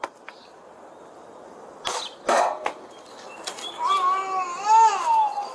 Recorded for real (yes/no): yes